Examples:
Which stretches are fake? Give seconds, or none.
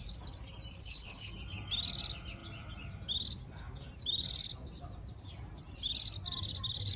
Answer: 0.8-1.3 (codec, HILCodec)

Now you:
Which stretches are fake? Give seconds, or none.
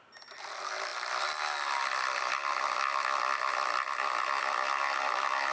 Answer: none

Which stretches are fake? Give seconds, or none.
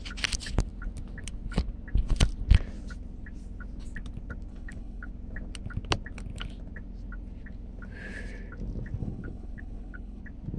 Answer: 4.5-5.1 (codec, HILCodec); 9.0-10.2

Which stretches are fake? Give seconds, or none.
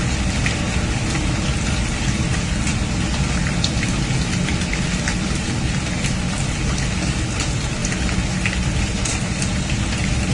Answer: none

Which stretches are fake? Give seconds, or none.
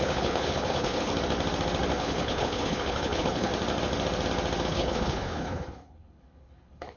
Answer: 0.0-1.1 (codec, HILCodec); 2.0-3.5; 4.6-7.0